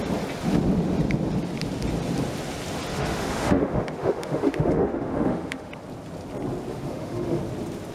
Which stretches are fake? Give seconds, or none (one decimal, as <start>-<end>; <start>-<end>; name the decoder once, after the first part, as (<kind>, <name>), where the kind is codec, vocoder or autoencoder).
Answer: 2.9-5.7 (autoencoder, DAC-VAE); 6.7-7.4